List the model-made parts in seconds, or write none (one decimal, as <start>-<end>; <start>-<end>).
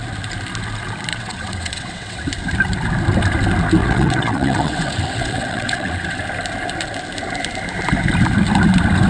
1.1-2.2; 3.8-6.2